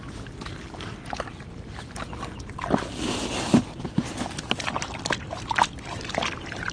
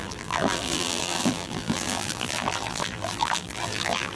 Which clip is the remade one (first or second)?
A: second